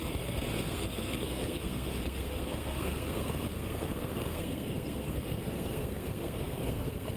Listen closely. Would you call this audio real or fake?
fake